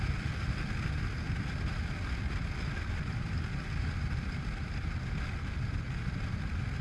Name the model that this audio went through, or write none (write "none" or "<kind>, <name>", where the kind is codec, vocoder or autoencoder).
none